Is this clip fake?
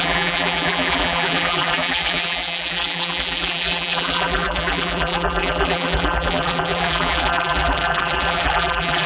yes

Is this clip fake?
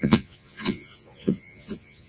yes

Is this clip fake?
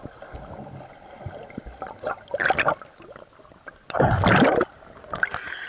no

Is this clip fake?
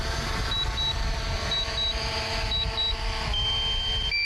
no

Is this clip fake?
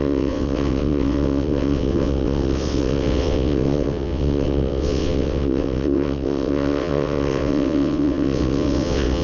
yes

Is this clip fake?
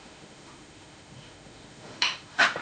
yes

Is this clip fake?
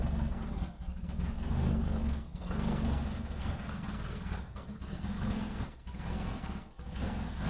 yes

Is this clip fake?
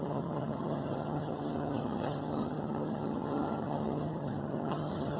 yes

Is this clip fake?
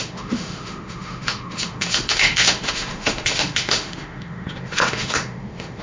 yes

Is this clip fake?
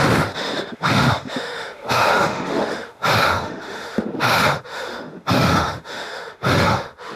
yes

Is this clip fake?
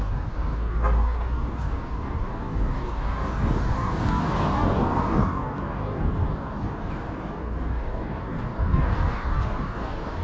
yes